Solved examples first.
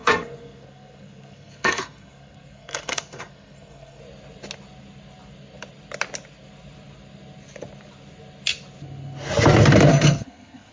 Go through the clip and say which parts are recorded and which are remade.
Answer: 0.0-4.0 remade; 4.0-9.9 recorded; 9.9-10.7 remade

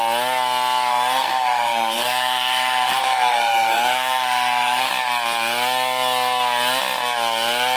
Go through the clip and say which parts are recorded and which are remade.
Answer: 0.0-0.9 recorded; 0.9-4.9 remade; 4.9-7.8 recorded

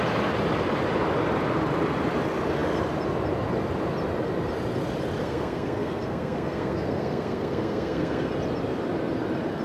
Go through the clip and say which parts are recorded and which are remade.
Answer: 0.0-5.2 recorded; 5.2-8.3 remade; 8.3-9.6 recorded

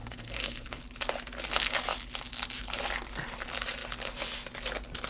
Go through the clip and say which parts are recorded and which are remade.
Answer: 0.0-0.8 remade; 0.8-5.1 recorded